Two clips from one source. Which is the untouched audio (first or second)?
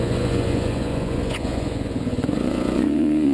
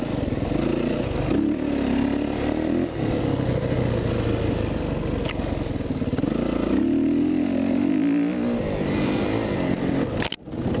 second